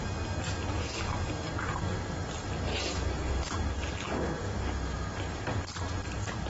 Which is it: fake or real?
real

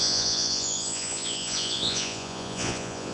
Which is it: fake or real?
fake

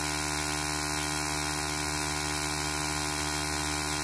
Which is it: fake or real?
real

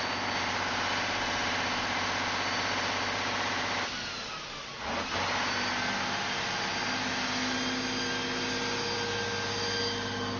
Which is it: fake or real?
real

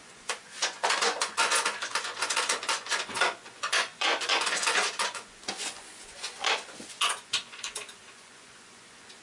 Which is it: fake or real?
fake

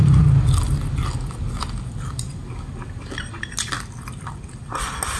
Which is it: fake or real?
real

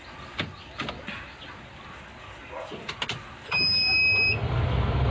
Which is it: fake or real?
real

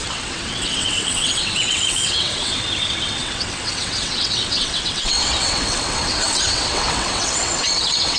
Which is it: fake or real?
fake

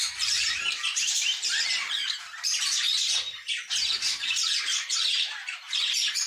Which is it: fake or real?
fake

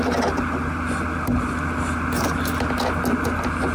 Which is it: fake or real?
real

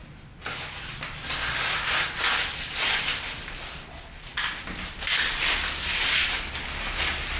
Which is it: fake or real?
real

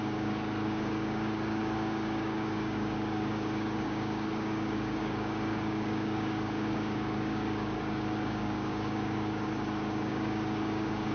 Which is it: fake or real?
fake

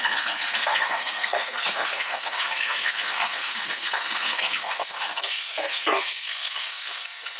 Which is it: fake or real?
fake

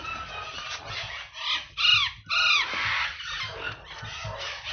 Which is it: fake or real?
real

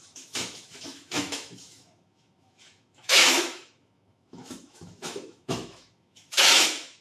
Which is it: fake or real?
fake